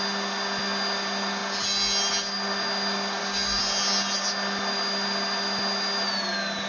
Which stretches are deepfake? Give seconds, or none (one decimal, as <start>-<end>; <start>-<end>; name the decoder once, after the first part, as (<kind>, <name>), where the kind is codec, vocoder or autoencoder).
none